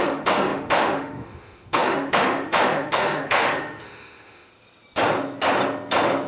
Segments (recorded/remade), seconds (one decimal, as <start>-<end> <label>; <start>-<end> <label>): 0.0-4.5 remade; 4.5-6.3 recorded